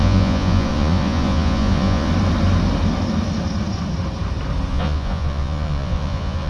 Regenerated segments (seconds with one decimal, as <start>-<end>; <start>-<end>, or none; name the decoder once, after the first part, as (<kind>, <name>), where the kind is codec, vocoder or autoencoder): 0.0-2.1 (vocoder, Vocos); 4.7-6.5